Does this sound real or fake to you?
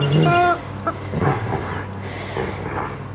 real